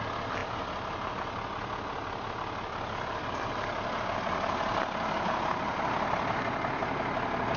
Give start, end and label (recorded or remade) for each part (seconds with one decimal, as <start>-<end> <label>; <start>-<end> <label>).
0.0-7.6 recorded